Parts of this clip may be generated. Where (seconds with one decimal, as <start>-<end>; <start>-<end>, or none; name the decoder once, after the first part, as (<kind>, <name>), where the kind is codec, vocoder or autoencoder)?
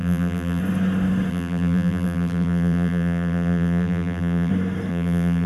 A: 0.0-0.6 (vocoder, BigVGAN v2); 1.3-4.5; 4.9-5.5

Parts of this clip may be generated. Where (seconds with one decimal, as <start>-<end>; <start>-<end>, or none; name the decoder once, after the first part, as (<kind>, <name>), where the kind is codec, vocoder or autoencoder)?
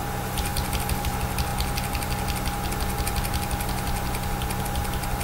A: none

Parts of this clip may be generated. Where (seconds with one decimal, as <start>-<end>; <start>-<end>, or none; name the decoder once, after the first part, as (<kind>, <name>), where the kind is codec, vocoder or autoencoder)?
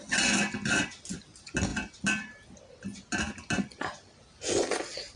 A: none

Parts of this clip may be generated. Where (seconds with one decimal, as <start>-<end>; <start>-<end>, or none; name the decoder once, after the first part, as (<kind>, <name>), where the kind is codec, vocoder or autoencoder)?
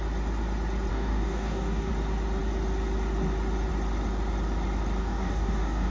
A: 0.9-1.9 (codec, DAC); 5.0-5.9